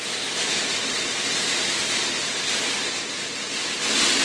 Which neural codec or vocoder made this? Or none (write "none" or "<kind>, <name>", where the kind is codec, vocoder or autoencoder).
vocoder, BigVGAN v2